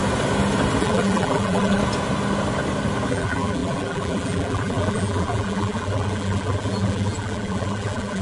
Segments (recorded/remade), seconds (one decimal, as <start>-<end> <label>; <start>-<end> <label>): 0.0-0.8 recorded; 0.8-1.8 remade; 1.8-3.1 recorded; 3.1-8.2 remade